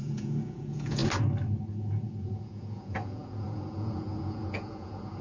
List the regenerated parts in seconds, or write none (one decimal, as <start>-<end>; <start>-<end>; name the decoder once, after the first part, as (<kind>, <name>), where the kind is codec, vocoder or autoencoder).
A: 0.0-1.0 (vocoder, Vocos); 1.7-5.2